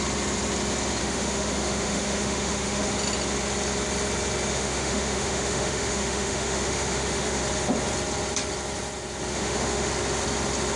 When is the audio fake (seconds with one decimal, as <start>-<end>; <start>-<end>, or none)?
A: 1.0-2.9; 4.5-7.4; 9.3-9.9